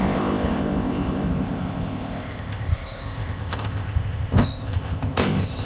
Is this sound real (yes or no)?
no